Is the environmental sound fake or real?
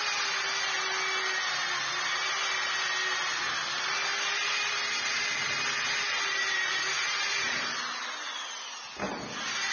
real